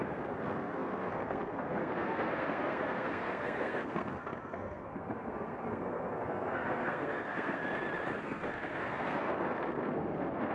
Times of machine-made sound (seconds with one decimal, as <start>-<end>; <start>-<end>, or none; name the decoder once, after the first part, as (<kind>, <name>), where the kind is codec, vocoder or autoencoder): 0.0-7.6 (codec, SNAC); 8.2-10.5